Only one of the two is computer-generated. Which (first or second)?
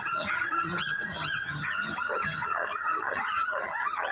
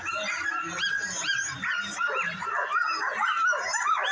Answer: first